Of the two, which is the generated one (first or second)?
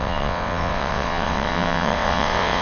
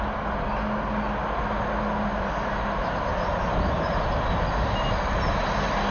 first